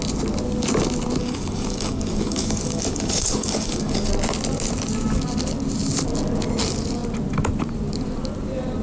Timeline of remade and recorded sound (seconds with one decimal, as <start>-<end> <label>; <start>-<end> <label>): 0.0-1.2 recorded; 1.2-4.1 remade; 4.1-8.8 recorded